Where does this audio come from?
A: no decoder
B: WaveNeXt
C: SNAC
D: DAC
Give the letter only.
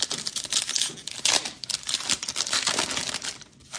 A